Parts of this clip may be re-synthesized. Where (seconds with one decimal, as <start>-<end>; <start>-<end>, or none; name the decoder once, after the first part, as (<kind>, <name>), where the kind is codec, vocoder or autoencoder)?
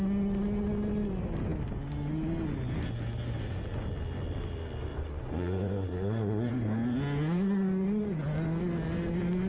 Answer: 4.9-6.5 (vocoder, Vocos)